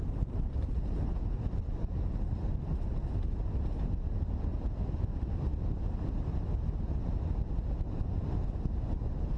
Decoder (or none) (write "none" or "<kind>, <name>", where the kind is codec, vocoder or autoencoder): none